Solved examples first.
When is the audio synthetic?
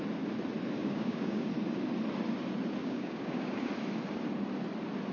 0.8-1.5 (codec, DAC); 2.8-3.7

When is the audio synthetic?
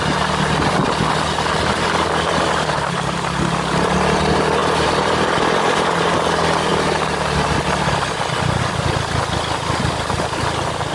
4.6-6.0 (vocoder, BigVGAN v2)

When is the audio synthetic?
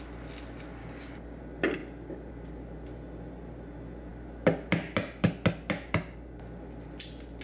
0.8-1.4 (codec, DAC)